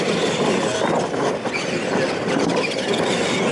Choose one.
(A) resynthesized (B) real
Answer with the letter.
A